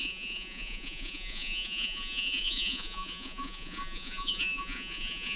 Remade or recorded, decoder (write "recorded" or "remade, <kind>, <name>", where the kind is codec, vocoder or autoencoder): remade, vocoder, Vocos